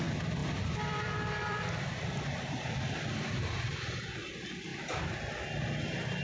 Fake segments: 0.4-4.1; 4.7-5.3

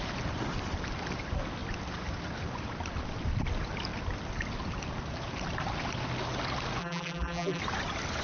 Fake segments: 6.8-7.6